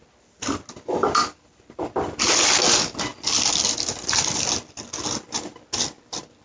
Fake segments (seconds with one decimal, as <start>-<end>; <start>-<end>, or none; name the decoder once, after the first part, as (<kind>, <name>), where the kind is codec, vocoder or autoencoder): none